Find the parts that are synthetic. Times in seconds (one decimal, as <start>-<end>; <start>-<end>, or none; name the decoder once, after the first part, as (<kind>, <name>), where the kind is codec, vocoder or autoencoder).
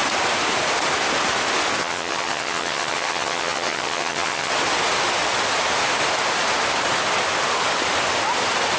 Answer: 1.8-4.5 (vocoder, HiFi-GAN)